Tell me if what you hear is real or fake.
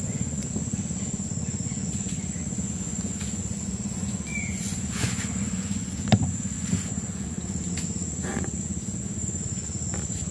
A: fake